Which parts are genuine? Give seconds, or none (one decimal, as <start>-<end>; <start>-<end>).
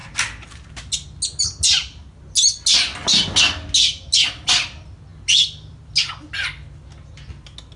0.0-7.8